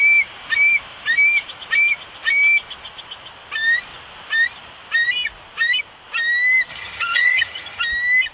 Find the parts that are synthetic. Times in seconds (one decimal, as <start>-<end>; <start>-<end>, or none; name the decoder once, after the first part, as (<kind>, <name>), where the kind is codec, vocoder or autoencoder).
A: 6.7-7.8 (vocoder, HiFi-GAN)